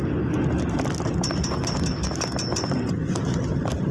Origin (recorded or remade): recorded